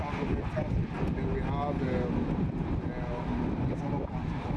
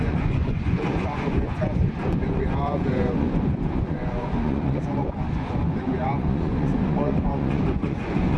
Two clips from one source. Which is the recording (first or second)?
first